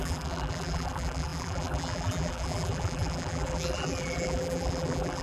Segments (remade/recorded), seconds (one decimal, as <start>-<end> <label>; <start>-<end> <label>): 0.0-5.2 remade